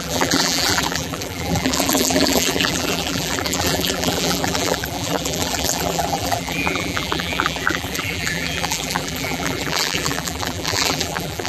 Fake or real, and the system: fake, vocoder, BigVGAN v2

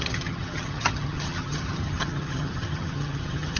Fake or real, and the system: fake, vocoder, HiFi-GAN